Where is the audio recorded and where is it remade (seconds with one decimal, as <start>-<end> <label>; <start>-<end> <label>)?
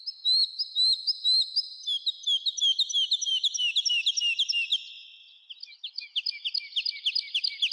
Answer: 0.0-7.7 recorded